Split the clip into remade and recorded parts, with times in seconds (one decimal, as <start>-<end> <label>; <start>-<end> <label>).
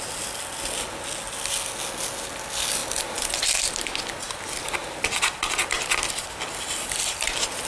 0.0-7.7 recorded